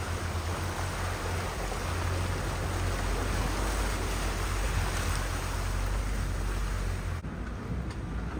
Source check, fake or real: real